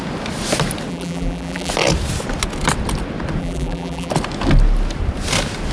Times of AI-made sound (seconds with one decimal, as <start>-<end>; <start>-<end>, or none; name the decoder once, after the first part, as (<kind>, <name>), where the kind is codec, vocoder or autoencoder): 0.9-1.7 (vocoder, BigVGAN v2); 3.4-4.1